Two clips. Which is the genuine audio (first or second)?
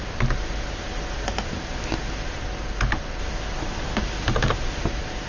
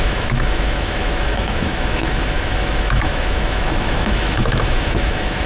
first